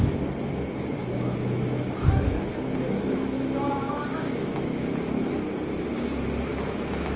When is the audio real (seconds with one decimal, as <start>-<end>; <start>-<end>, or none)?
0.0-1.0; 5.3-6.5